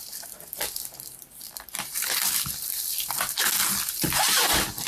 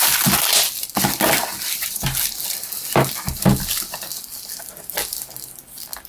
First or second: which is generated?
first